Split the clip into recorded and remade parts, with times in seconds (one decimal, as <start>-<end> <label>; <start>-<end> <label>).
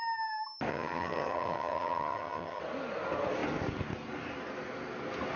0.0-0.7 recorded; 0.7-2.6 remade; 2.6-5.4 recorded